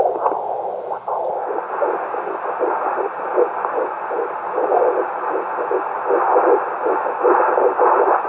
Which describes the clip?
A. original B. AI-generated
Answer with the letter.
A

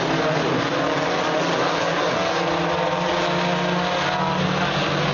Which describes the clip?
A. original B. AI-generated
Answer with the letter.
A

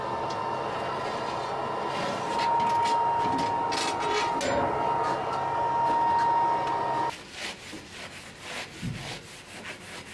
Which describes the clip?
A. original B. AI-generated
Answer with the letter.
A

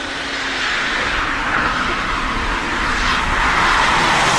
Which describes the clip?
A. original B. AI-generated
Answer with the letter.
A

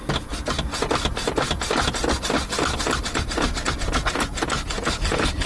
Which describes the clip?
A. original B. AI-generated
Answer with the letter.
A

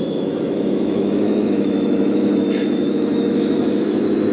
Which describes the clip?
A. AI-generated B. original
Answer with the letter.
A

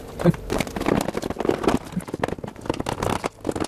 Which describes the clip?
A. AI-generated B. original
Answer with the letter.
B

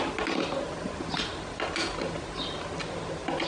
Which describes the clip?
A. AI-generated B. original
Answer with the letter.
B